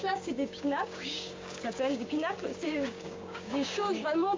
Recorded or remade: remade